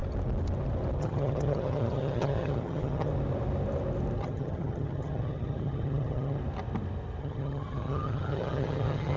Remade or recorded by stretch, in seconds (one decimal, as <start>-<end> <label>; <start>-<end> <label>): 0.0-1.0 recorded; 1.0-3.1 remade; 3.1-4.2 recorded; 4.2-6.4 remade; 6.4-7.2 recorded; 7.2-9.2 remade